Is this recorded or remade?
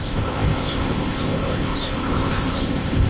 remade